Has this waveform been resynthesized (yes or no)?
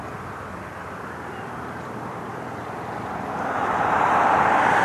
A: yes